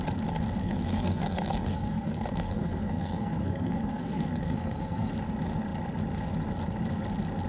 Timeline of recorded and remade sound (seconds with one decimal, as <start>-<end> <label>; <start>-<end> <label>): 0.0-0.6 recorded; 0.6-5.1 remade; 5.1-7.5 recorded